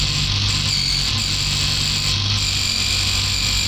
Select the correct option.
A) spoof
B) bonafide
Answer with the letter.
B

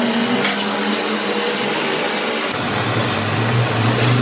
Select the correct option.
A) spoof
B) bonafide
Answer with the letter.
B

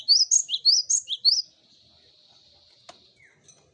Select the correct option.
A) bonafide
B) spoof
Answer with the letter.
A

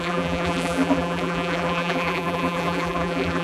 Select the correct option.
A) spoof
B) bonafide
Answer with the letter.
A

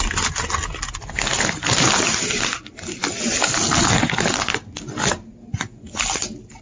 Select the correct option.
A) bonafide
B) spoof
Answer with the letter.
A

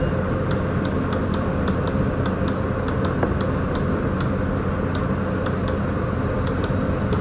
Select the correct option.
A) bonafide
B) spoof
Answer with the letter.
A